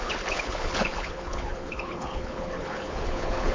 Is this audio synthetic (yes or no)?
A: yes